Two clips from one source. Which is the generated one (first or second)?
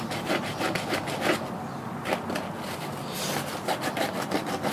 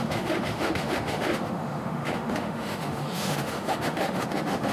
second